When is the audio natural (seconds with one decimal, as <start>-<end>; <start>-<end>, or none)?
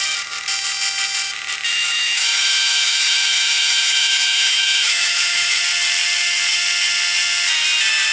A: 0.0-1.7; 5.6-8.1